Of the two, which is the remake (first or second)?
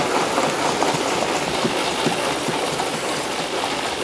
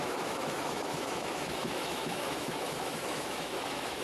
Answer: second